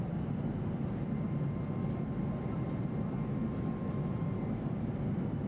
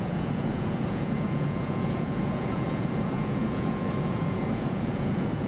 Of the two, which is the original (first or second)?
first